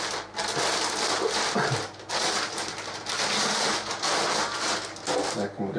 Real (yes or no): yes